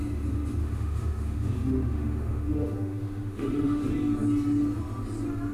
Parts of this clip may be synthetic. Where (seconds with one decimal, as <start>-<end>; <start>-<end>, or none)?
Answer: 0.6-3.9

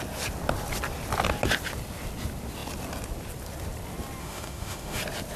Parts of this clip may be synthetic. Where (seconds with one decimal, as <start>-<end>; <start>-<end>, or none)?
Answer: 4.2-5.0

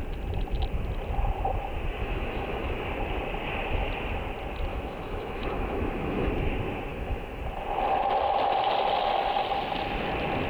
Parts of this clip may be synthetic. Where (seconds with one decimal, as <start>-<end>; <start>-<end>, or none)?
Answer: 2.0-2.8; 4.7-6.3; 6.9-7.4

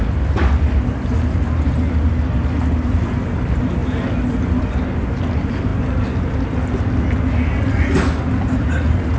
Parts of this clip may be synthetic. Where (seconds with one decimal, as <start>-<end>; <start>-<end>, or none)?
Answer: none